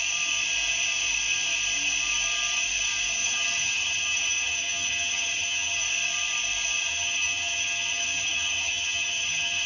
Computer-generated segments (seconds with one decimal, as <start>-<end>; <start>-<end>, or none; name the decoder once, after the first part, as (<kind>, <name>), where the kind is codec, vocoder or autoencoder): 3.2-5.8 (vocoder, HiFi-GAN); 6.9-9.7